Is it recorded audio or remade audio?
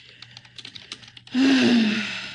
recorded